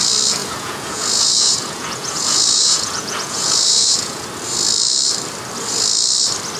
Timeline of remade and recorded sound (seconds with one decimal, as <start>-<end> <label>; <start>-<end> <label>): 0.0-0.4 recorded; 0.4-4.3 remade; 4.3-6.6 recorded